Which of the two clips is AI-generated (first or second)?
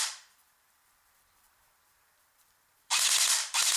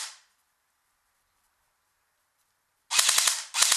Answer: first